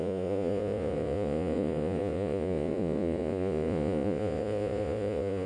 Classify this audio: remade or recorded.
remade